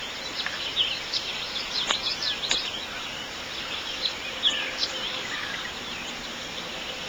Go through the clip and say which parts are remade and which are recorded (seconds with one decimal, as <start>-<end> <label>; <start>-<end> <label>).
0.0-5.1 recorded; 5.1-5.6 remade; 5.6-7.1 recorded